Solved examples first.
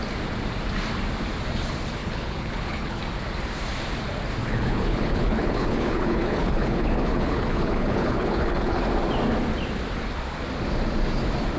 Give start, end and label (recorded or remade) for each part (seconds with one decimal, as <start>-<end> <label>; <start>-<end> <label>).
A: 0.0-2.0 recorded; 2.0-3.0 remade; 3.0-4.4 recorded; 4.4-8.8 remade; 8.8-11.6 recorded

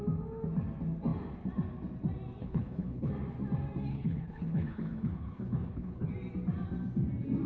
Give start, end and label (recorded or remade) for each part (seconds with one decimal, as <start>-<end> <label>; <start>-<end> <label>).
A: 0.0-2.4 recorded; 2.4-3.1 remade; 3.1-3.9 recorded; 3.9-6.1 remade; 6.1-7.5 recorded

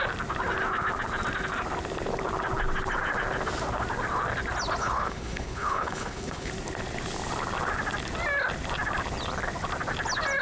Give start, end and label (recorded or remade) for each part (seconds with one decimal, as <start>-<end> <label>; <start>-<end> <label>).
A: 0.0-4.8 recorded; 4.8-6.5 remade; 6.5-10.4 recorded